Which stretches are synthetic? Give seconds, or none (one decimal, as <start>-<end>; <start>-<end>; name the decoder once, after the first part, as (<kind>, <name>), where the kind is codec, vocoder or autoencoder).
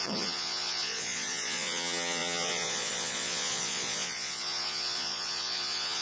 0.0-6.0 (vocoder, Vocos)